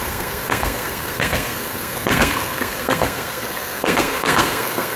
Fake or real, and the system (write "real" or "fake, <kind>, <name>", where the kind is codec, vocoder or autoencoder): fake, codec, SNAC